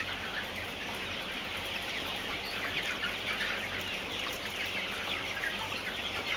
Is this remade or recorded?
remade